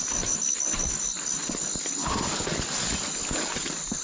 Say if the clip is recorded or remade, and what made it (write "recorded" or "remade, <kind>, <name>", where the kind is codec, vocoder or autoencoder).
recorded